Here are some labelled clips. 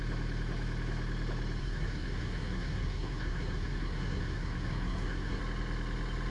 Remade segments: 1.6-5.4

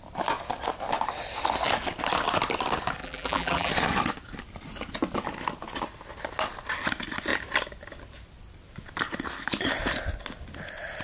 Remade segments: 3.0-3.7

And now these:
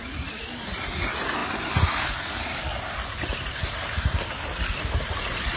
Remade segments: none

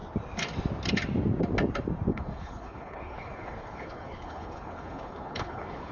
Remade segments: 2.1-5.9